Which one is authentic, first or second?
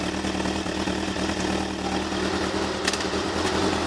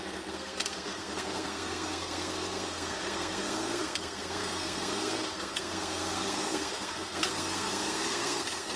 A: first